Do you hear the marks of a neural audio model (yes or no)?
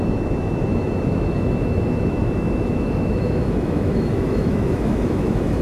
yes